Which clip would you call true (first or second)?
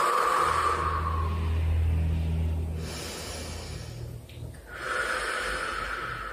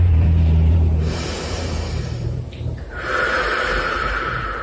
first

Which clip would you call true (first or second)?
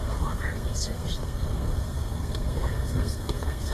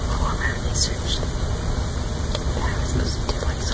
second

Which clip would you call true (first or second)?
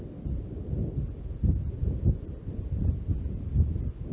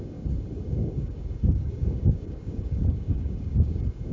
first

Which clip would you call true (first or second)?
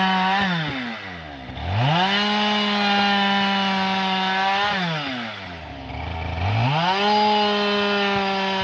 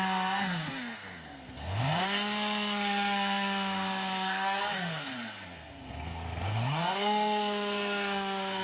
first